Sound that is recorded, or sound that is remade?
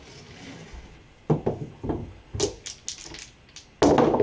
recorded